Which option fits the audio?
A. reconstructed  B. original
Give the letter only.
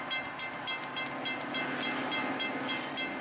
B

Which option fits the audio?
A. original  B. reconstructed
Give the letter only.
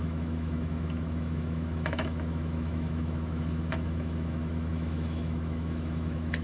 B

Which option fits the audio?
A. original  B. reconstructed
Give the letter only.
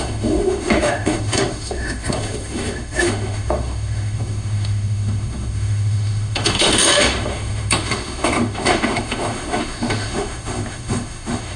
B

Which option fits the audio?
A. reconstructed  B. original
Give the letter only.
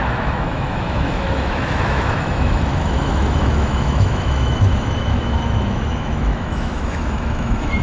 A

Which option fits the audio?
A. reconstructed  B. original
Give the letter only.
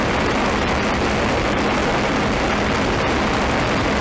B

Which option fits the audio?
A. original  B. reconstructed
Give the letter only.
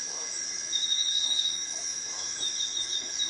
B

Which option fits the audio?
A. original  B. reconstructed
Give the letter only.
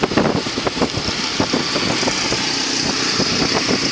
A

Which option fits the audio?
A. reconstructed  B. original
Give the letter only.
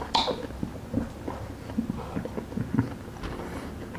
B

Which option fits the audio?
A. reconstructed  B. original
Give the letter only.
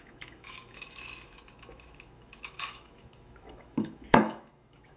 A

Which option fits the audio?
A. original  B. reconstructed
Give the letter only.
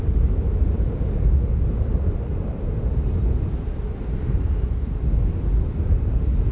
A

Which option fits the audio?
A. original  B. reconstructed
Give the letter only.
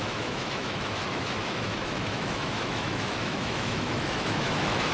B